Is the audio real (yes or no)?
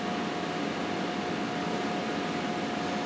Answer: yes